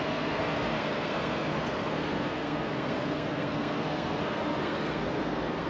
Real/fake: fake